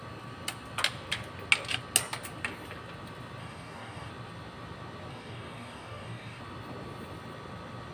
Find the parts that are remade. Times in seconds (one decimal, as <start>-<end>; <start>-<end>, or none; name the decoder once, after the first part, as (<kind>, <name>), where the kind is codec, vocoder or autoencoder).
3.4-4.1 (codec, DAC); 5.1-6.4